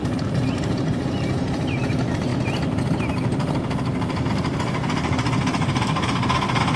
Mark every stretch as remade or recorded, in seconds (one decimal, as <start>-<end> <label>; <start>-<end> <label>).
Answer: 0.0-2.3 remade; 2.3-4.3 recorded; 4.3-6.8 remade